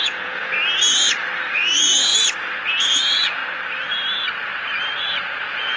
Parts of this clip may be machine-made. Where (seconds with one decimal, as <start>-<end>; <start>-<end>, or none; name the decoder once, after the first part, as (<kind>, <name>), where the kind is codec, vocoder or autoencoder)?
0.0-0.5 (vocoder, Vocos); 1.4-2.1; 2.8-3.4; 5.0-5.8